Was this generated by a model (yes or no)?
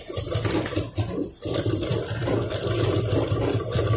yes